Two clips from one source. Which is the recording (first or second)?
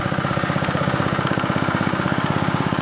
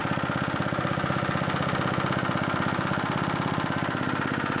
second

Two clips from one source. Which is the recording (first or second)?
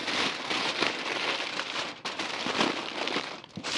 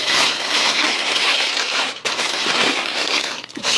first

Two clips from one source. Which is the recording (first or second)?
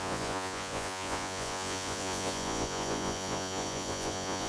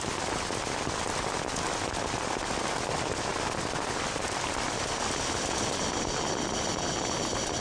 second